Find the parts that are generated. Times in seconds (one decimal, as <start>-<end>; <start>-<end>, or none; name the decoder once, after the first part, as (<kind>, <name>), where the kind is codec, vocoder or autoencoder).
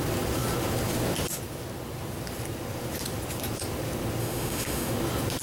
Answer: 4.2-4.9 (autoencoder, DAC-VAE)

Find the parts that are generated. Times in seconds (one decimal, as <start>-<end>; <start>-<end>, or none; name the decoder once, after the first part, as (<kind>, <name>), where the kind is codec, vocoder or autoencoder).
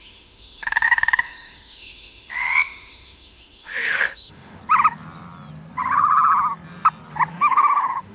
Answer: 0.0-4.6 (autoencoder, DAC-VAE); 7.3-8.1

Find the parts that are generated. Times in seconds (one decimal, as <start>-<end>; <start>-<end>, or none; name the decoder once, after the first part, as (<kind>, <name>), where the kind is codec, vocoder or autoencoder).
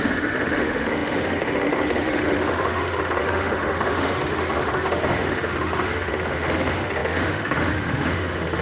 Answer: 0.0-8.6 (autoencoder, DAC-VAE)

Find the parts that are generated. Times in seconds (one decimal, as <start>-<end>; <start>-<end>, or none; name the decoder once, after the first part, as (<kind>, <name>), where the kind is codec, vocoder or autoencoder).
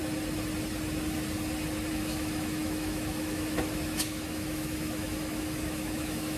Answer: 1.9-6.4 (autoencoder, DAC-VAE)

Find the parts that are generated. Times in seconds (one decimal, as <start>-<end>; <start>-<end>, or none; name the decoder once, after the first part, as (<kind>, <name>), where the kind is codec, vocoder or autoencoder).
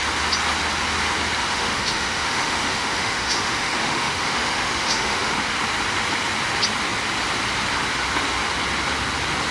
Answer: 1.4-5.3 (autoencoder, DAC-VAE)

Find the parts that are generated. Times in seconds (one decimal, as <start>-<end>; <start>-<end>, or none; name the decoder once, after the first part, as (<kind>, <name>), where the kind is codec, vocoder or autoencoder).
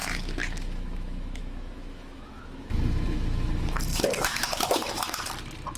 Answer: 0.0-3.5 (autoencoder, DAC-VAE); 3.9-5.2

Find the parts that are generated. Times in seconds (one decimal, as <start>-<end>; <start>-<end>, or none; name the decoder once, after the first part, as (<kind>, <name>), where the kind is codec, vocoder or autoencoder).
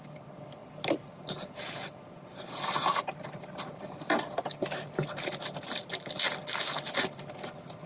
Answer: none